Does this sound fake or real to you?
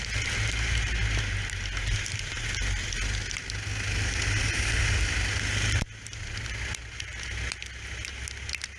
real